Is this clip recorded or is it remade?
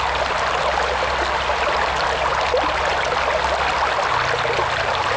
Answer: recorded